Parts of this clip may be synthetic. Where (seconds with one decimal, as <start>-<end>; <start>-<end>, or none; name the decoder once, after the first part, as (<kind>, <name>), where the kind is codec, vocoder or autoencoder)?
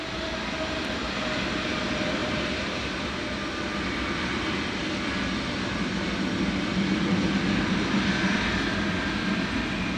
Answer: 2.2-3.0 (vocoder, BigVGAN v2)